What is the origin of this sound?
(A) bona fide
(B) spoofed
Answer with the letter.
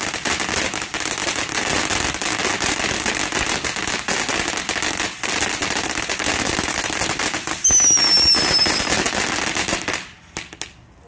A